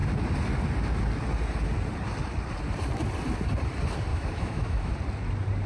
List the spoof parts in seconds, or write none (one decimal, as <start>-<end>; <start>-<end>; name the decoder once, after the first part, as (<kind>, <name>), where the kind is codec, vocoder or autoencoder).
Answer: 4.1-4.9 (autoencoder, DAC-VAE)